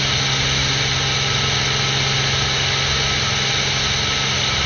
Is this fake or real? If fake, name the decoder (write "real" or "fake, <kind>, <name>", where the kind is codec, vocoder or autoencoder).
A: real